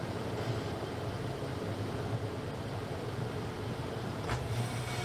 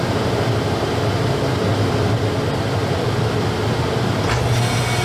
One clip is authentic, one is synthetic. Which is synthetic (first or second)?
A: first